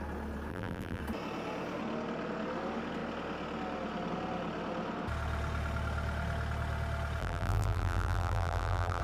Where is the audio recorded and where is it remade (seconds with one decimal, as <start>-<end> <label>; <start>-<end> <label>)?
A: 0.0-0.5 recorded; 0.5-1.0 remade; 1.0-7.2 recorded; 7.2-9.0 remade